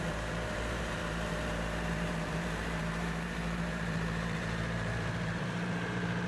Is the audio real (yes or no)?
no